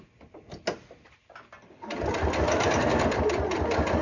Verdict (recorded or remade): recorded